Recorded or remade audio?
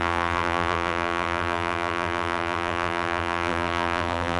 remade